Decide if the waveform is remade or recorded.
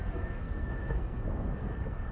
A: remade